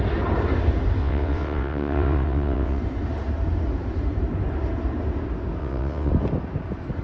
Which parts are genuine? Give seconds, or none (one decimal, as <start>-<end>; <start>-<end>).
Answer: 0.0-1.0; 2.8-5.6; 6.1-7.0